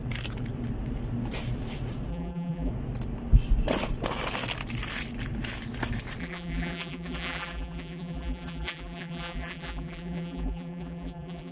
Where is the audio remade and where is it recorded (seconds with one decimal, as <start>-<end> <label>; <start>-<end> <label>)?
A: 0.0-2.1 recorded; 2.1-2.7 remade; 2.7-6.2 recorded; 6.2-11.5 remade